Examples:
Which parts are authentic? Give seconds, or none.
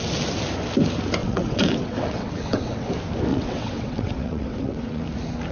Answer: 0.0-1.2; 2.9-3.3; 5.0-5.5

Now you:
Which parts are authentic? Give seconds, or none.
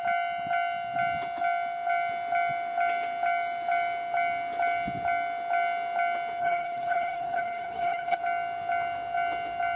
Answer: 0.0-6.4; 8.2-9.8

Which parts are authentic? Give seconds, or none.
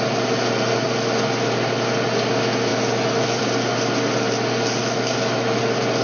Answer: 0.0-2.7; 3.4-4.8; 5.6-6.0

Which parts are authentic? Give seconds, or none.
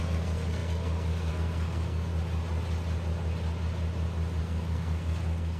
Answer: 2.1-4.4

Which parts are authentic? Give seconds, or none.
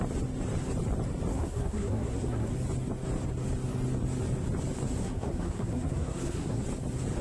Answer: 0.0-1.3; 2.5-5.0; 6.6-7.2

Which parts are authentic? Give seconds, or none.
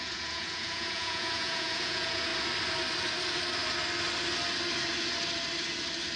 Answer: 2.3-6.2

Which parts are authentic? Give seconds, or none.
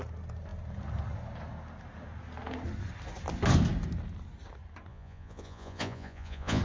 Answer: 0.0-4.9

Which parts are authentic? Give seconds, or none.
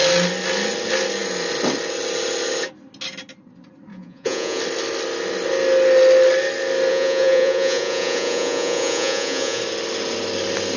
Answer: 0.0-3.9; 4.6-6.9; 9.6-10.8